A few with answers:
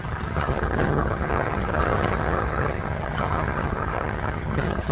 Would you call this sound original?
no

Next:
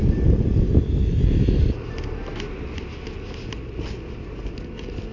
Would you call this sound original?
yes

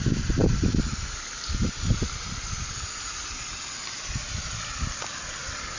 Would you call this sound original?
yes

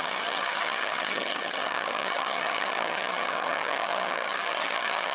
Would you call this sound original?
no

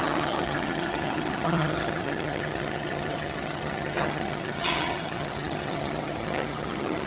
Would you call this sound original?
no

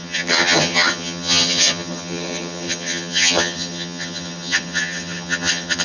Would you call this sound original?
no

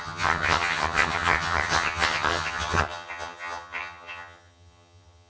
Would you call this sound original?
no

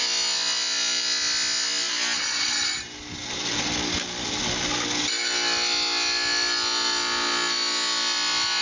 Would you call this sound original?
yes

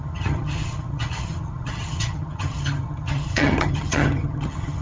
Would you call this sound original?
no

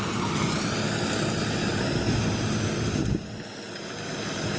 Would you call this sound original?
yes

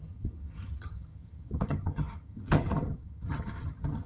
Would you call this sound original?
no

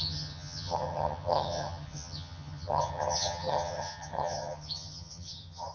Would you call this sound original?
no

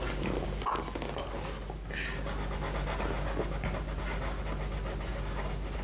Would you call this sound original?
yes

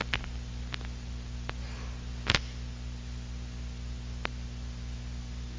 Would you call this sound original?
yes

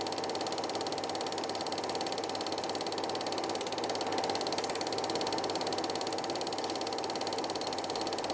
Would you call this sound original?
yes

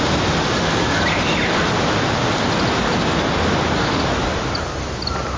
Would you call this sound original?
yes